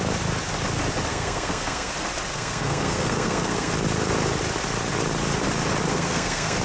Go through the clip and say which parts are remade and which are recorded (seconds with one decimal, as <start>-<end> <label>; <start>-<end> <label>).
0.0-1.1 recorded; 1.1-1.9 remade; 1.9-2.3 recorded; 2.3-3.7 remade; 3.7-5.9 recorded; 5.9-6.6 remade